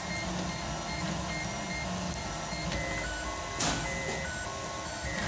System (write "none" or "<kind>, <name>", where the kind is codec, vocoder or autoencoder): none